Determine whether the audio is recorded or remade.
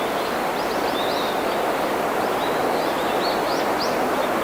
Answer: recorded